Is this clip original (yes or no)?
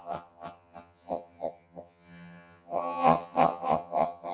no